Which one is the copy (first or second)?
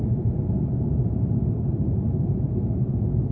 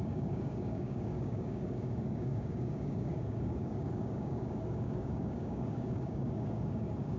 second